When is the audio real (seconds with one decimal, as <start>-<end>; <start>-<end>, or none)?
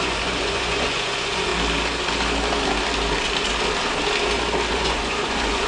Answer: 1.5-4.7